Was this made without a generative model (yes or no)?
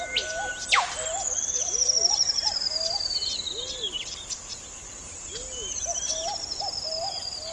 yes